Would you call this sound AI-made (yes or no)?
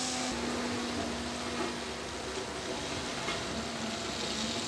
no